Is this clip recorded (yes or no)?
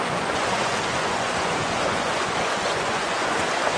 no